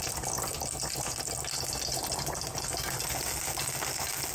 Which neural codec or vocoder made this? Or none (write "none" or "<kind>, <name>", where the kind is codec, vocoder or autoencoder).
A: none